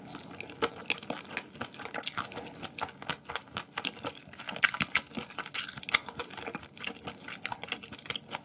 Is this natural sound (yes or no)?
yes